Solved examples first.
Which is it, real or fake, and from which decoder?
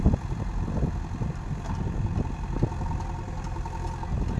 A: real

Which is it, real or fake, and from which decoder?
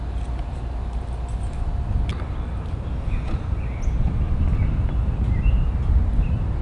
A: real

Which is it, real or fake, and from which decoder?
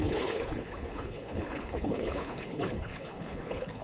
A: fake, codec, HILCodec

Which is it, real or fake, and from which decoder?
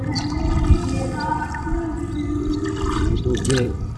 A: real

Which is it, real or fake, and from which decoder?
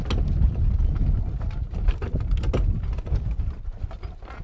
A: real